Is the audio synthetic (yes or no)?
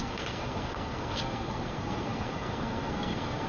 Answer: yes